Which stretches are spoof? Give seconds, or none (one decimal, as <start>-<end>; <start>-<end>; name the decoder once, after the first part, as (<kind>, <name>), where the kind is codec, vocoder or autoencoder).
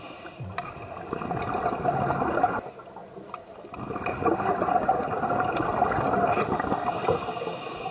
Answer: none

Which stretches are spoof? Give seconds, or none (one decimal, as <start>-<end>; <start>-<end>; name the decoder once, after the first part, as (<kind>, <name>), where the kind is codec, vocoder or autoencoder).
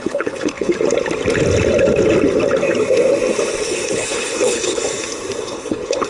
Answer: 0.0-0.7 (codec, HILCodec); 3.6-4.8; 5.4-6.1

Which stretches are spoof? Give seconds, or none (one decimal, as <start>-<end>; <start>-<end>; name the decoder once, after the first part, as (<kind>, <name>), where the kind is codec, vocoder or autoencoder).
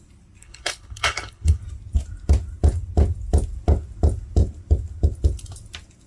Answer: 0.4-1.6 (codec, HILCodec)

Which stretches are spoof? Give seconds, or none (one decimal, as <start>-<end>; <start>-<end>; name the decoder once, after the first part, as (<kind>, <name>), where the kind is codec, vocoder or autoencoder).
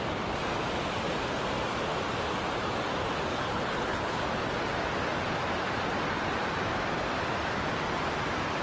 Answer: 3.3-4.2 (codec, HILCodec)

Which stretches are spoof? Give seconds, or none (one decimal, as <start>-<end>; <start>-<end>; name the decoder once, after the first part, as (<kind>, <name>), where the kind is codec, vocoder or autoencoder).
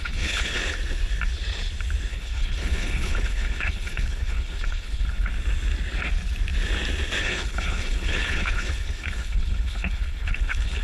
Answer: 0.0-0.6 (codec, HILCodec); 2.1-5.3; 7.2-10.8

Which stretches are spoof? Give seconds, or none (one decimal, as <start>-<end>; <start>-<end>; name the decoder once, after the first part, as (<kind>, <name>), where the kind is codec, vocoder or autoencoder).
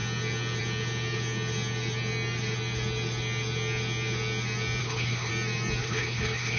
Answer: 4.8-5.3 (codec, HILCodec); 5.8-6.6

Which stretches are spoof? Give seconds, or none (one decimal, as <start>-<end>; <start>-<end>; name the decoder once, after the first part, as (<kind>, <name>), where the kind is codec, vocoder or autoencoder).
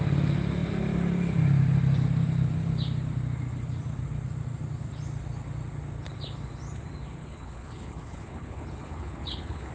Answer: 7.2-9.7 (codec, HILCodec)